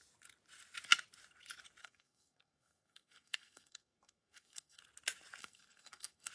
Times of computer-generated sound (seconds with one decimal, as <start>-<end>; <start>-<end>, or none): 1.8-4.8; 5.4-6.3